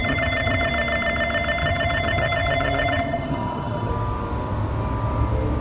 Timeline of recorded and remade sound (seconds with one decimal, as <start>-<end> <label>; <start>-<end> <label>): 0.0-0.7 remade; 0.7-1.6 recorded; 1.6-3.9 remade; 3.9-5.6 recorded